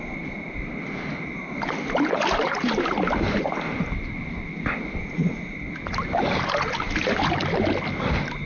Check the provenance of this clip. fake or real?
real